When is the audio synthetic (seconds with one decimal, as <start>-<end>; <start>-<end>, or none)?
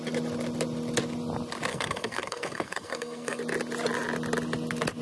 1.7-3.4